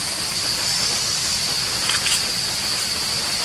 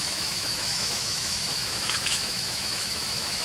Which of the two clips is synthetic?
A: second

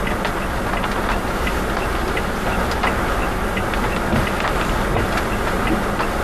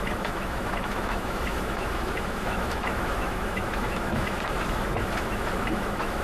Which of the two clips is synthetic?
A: second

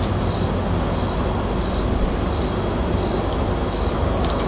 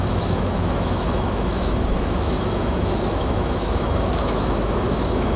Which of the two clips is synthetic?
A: second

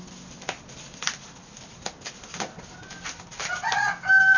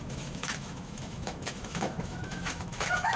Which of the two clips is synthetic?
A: second